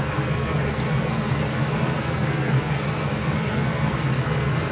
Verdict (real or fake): fake